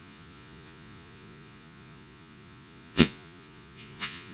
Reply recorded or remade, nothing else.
remade